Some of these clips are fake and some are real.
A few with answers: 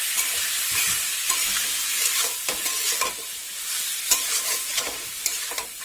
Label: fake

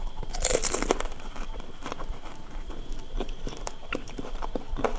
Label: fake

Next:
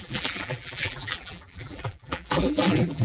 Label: fake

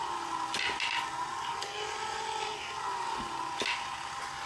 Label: real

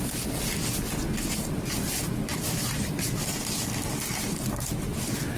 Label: real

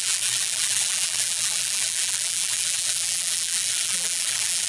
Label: fake